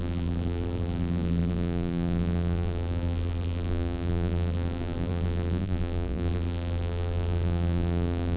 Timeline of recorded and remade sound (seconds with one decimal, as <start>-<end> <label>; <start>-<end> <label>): 0.0-8.4 remade